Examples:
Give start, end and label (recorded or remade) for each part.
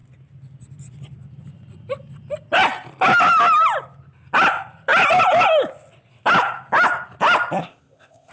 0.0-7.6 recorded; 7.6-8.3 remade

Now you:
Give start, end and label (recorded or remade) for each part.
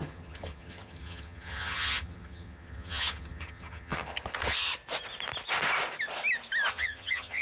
0.0-4.7 remade; 4.7-6.7 recorded; 6.7-7.4 remade